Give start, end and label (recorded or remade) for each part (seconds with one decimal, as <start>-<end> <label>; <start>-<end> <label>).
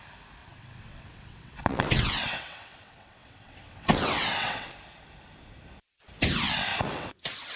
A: 0.0-0.4 recorded; 0.4-4.7 remade; 4.7-6.7 recorded; 6.7-7.6 remade